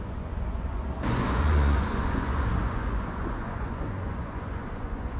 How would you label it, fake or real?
fake